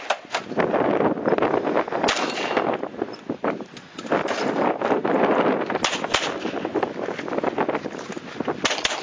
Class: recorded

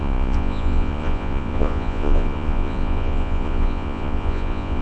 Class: remade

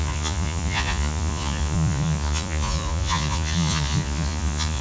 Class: remade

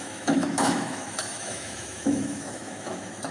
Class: remade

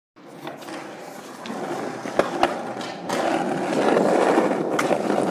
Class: recorded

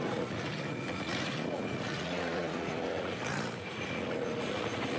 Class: remade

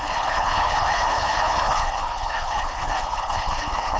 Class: remade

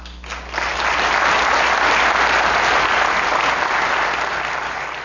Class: recorded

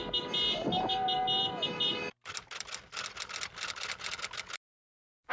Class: recorded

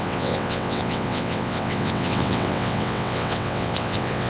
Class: remade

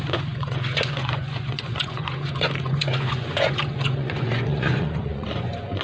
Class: remade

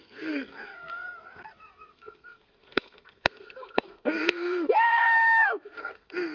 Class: remade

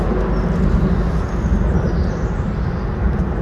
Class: recorded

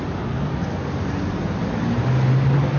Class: recorded